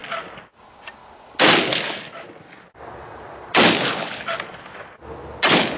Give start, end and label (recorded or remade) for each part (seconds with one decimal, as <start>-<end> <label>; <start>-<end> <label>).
0.0-5.8 recorded